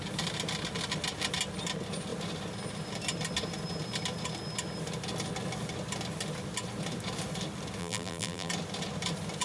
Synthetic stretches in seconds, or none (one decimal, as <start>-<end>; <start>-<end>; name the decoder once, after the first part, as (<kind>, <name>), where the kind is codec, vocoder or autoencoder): 7.8-8.5 (vocoder, BigVGAN v2)